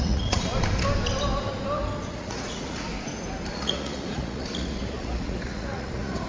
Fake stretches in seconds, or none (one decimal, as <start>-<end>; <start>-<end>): 0.0-0.5; 2.1-2.9; 3.5-6.3